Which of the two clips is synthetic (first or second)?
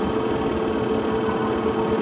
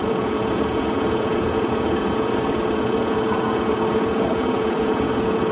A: second